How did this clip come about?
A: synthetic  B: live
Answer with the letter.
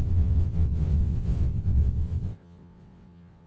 A